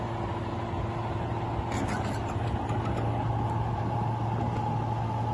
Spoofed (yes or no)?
no